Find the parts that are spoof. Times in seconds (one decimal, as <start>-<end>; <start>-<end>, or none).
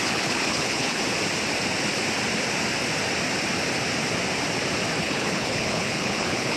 0.0-1.0; 5.0-6.6